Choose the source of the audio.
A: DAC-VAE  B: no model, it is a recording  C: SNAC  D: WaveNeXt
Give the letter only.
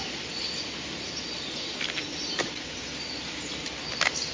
B